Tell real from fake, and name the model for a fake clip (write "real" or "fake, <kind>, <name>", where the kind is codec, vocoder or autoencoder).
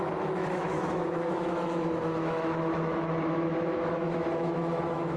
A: fake, autoencoder, DAC-VAE